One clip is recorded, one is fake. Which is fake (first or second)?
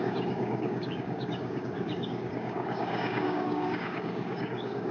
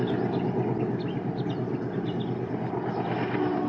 first